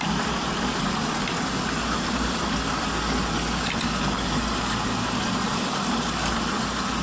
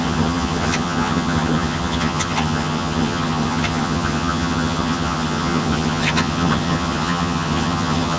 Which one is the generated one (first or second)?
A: second